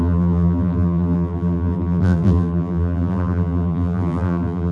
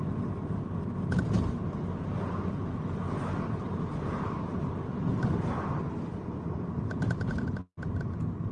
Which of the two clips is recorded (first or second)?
second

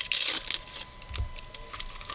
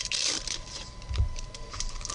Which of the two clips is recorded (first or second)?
first